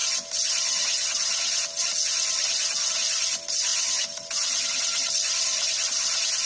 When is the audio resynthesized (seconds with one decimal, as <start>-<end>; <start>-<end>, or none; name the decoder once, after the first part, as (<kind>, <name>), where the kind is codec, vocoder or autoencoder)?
none